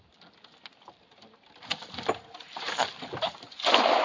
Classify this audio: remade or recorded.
recorded